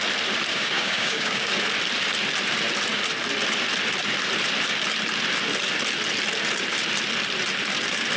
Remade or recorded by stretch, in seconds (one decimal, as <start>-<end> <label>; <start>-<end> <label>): 0.0-0.5 recorded; 0.5-1.5 remade; 1.5-8.2 recorded

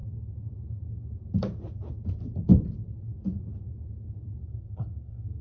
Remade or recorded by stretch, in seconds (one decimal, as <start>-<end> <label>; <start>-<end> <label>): 0.0-4.4 recorded; 4.4-5.4 remade